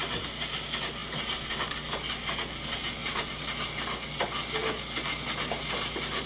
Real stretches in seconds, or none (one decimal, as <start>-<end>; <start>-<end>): 0.0-6.3